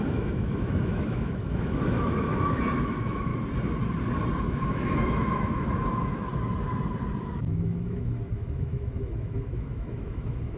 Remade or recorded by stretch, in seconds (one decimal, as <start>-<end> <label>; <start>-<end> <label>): 0.0-3.3 remade; 3.3-4.4 recorded; 4.4-6.3 remade; 6.3-7.2 recorded; 7.2-10.6 remade